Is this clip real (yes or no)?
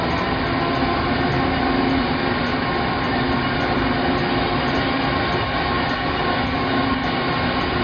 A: yes